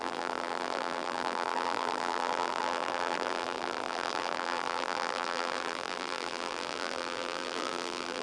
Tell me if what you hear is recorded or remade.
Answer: remade